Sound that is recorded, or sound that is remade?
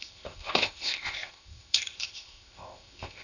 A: remade